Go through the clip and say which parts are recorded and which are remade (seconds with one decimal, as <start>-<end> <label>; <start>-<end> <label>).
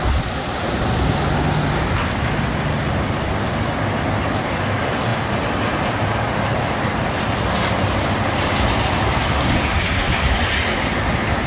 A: 0.0-11.5 recorded